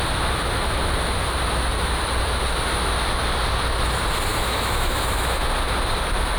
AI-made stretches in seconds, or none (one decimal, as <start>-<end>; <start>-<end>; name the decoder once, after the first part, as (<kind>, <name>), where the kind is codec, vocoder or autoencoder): 4.3-5.5 (autoencoder, DAC-VAE)